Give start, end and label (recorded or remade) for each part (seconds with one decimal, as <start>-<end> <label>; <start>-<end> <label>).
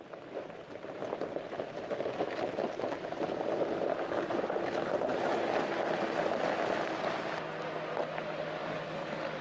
0.0-3.9 recorded; 3.9-4.6 remade; 4.6-8.6 recorded; 8.6-9.4 remade